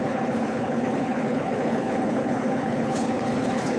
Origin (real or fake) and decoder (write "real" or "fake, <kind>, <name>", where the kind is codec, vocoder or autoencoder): fake, codec, HILCodec